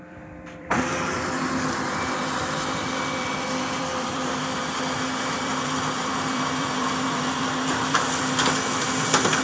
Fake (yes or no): yes